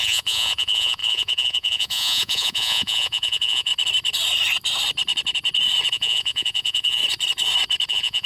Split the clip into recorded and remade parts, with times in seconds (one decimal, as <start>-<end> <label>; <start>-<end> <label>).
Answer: 0.0-3.7 remade; 3.7-5.9 recorded; 5.9-7.0 remade; 7.0-7.9 recorded; 7.9-8.3 remade